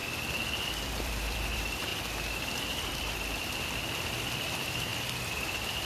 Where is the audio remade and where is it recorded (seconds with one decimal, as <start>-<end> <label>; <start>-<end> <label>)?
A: 0.0-0.7 recorded; 0.7-1.9 remade; 1.9-2.9 recorded; 2.9-4.9 remade; 4.9-5.5 recorded; 5.5-5.9 remade